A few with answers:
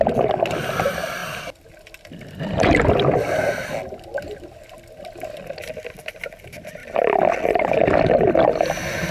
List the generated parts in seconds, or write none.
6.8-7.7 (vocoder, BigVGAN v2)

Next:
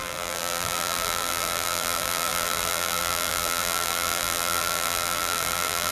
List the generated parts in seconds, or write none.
0.0-5.9 (vocoder, BigVGAN v2)

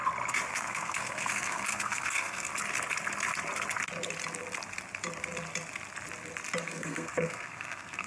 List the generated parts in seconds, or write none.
0.5-2.5 (codec, SNAC); 6.6-8.1

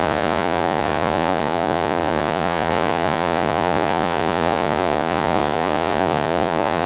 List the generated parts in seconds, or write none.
0.0-6.9 (vocoder, Vocos)

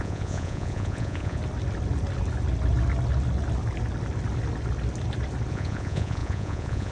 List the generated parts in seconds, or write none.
0.0-1.4 (vocoder, Vocos); 5.5-6.9

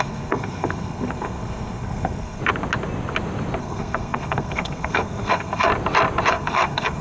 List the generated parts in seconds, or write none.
0.0-2.4 (codec, SNAC); 3.6-5.7; 6.3-7.0